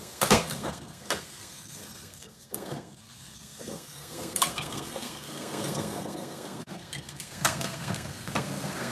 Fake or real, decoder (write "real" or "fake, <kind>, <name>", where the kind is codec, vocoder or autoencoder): fake, codec, SNAC